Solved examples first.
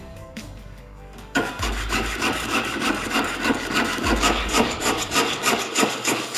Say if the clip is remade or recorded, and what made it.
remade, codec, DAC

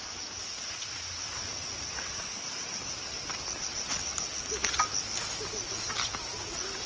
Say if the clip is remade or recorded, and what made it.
recorded